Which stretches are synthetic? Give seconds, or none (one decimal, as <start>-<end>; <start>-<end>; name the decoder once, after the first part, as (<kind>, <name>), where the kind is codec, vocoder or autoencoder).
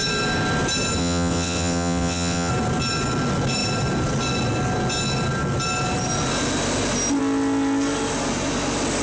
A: 1.0-2.5 (vocoder, WaveNeXt)